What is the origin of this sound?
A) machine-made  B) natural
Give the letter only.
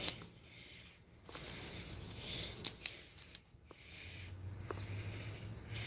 B